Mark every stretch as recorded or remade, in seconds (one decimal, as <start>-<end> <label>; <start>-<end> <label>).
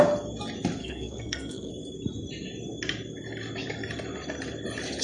0.0-0.8 recorded; 0.8-1.7 remade; 1.7-5.0 recorded